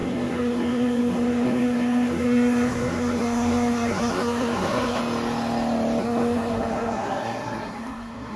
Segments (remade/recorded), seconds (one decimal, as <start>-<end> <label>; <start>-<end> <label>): 0.0-5.0 remade; 5.0-6.0 recorded; 6.0-8.4 remade